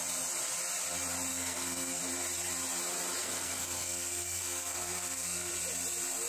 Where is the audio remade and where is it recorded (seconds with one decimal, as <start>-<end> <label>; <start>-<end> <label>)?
0.0-1.3 recorded; 1.3-2.0 remade; 2.0-3.2 recorded; 3.2-5.5 remade; 5.5-6.3 recorded